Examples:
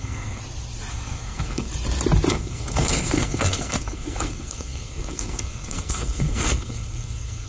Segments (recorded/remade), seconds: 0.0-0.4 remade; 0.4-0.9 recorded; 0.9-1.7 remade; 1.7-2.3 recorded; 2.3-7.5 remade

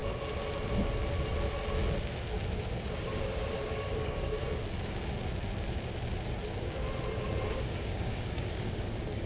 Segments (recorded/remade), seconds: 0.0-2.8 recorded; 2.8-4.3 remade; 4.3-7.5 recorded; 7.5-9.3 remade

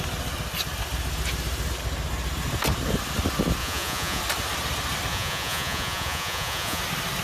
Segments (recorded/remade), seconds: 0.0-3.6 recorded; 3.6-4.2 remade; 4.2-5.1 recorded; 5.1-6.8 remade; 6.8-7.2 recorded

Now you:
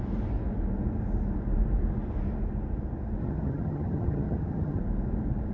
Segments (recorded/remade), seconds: 0.0-3.2 recorded; 3.2-4.8 remade; 4.8-5.5 recorded

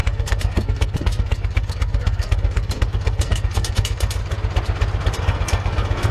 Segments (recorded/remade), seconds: 0.0-4.2 remade; 4.2-5.2 recorded; 5.2-6.1 remade

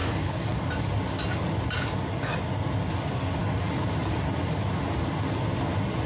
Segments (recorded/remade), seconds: 0.0-0.7 remade; 0.7-6.1 recorded

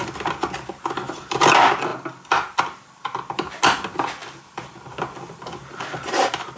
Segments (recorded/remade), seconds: 0.0-1.9 recorded; 1.9-3.5 remade; 3.5-6.6 recorded